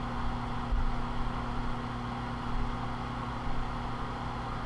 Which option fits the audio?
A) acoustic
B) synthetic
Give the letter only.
A